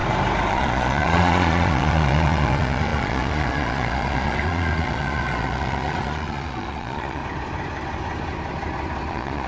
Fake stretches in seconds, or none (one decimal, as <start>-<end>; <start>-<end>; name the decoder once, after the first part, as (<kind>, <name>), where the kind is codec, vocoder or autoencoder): 0.5-7.2 (vocoder, Vocos); 9.1-9.5